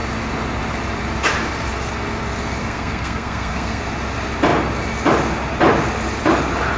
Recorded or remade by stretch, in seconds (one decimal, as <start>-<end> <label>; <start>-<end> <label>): 0.0-2.6 recorded; 2.6-3.8 remade; 3.8-6.8 recorded